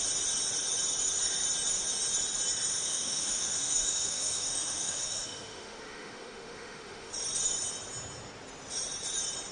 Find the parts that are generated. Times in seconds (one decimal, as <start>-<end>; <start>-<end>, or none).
2.7-7.1